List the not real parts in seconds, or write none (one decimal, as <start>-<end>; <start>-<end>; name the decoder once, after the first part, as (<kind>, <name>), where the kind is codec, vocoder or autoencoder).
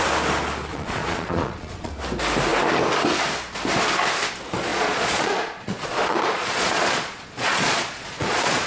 0.7-1.9 (vocoder, Vocos); 4.7-8.7